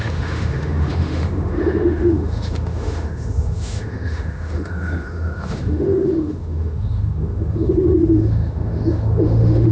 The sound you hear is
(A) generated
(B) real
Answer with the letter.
A